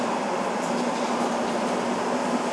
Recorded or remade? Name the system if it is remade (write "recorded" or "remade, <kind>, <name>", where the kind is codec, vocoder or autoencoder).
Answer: remade, vocoder, BigVGAN v2